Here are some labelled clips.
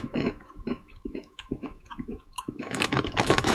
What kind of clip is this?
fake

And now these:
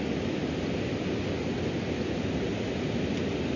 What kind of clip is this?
real